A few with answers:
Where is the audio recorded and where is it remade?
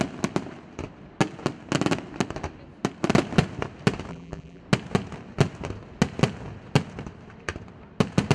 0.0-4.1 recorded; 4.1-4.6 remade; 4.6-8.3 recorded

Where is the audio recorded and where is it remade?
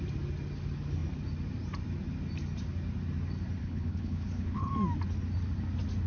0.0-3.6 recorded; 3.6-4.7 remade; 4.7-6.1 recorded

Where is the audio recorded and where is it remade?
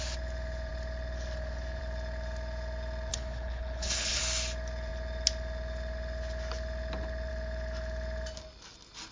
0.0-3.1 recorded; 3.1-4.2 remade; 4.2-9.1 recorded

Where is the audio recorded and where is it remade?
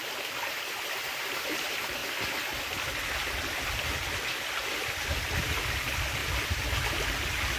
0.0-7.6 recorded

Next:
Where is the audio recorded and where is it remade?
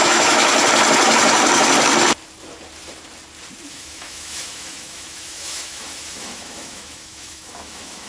0.0-0.5 remade; 0.5-3.7 recorded; 3.7-8.1 remade